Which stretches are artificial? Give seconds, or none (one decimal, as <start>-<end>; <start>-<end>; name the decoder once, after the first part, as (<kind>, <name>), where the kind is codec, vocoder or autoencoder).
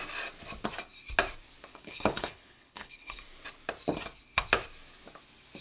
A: 1.7-3.2 (codec, HILCodec)